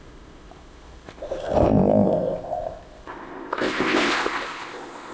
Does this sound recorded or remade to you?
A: remade